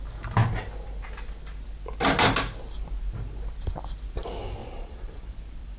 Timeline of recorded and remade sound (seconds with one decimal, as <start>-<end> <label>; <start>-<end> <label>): 0.0-4.6 recorded; 4.6-5.3 remade; 5.3-5.8 recorded